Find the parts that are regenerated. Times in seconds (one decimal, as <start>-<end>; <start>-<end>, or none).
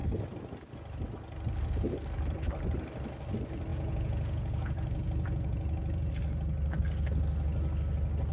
3.7-6.1